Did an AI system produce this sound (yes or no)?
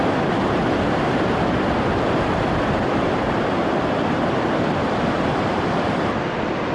no